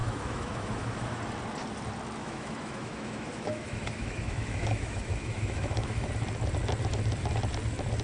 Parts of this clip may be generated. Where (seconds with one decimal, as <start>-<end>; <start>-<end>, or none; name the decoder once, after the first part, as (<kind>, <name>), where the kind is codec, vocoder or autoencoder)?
0.0-1.2 (autoencoder, DAC-VAE); 2.2-6.1